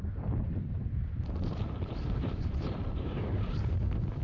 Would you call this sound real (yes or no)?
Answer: no